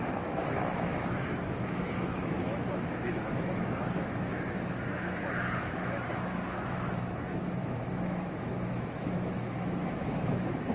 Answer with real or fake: fake